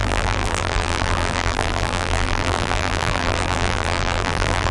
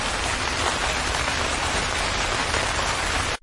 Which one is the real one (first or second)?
second